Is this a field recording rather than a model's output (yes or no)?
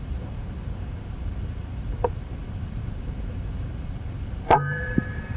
no